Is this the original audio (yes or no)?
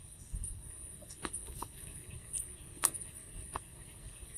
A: no